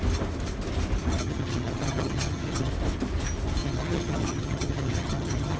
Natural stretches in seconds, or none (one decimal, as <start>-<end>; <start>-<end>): 0.0-1.2; 2.7-3.6